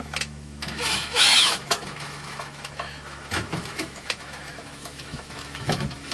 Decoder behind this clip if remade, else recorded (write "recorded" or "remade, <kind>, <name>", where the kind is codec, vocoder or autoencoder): remade, autoencoder, DAC-VAE